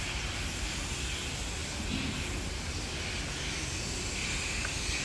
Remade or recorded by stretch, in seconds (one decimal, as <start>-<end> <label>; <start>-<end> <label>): 0.0-5.0 recorded